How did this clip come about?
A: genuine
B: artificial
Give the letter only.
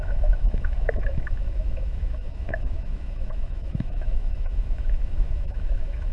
B